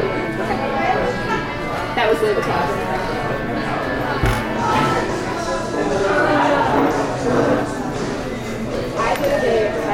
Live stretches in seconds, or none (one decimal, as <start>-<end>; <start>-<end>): 0.0-5.8; 6.5-9.9